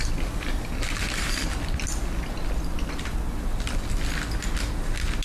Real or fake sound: real